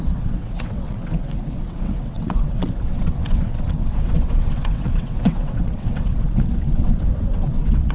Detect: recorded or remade remade